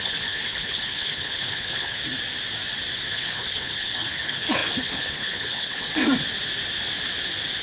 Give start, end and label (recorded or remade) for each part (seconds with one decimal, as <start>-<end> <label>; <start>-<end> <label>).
0.0-2.0 remade; 2.0-3.1 recorded; 3.1-5.9 remade; 5.9-7.6 recorded